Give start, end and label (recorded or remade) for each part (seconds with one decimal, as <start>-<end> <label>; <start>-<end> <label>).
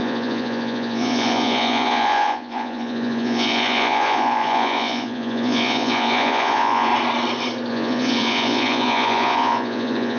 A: 0.0-6.9 remade; 6.9-7.7 recorded; 7.7-10.2 remade